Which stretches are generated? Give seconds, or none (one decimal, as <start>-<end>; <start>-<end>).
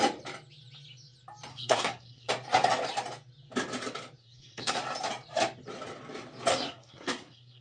1.5-2.3; 4.2-4.8; 6.5-7.6